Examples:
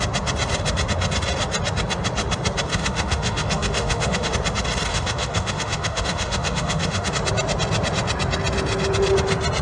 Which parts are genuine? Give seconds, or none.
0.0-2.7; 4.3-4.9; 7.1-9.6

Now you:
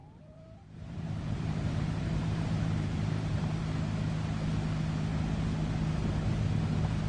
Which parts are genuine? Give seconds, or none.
3.6-7.1